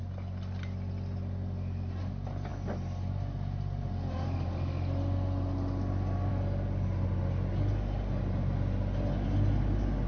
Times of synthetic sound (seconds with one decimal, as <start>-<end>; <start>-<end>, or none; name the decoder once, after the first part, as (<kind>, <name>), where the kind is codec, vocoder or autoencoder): none

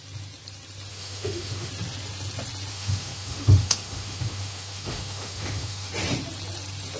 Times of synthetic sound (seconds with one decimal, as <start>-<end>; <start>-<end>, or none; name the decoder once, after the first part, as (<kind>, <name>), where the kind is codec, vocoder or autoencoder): 0.9-1.7 (autoencoder, DAC-VAE); 2.7-5.9